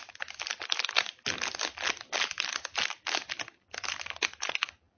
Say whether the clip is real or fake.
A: real